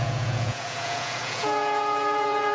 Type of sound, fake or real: fake